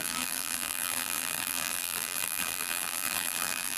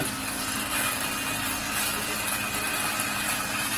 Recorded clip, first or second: second